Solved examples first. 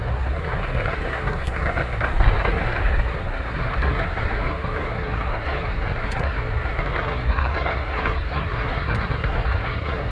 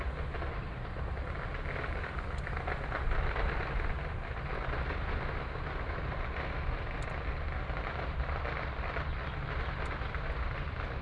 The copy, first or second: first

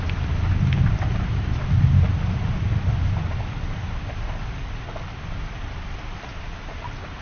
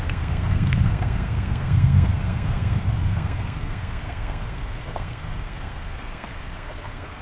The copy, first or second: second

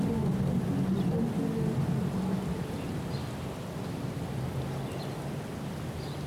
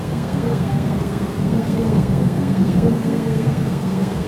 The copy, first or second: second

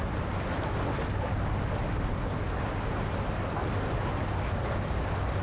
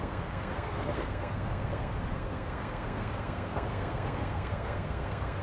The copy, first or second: second